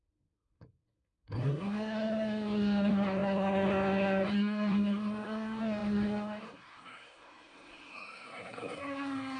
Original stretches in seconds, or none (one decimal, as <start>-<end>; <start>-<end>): none